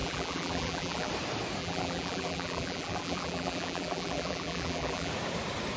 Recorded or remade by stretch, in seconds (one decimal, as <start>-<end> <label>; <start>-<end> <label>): 0.0-1.1 remade; 1.1-1.6 recorded; 1.6-5.1 remade; 5.1-5.8 recorded